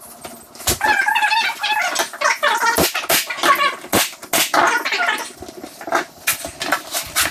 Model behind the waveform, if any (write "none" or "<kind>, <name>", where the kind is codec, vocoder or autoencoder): none